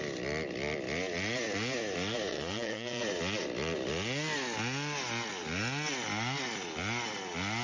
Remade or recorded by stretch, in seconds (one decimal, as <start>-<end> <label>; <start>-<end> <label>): 0.0-2.3 recorded; 2.3-3.0 remade; 3.0-7.6 recorded